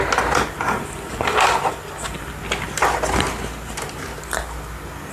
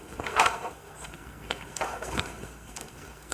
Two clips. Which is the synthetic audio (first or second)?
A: second